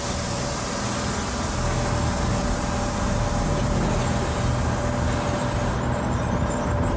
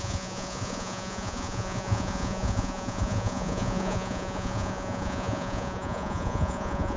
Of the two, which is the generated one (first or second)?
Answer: second